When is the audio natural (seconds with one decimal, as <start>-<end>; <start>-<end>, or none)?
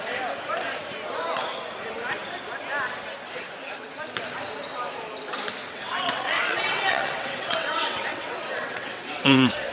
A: 0.0-5.6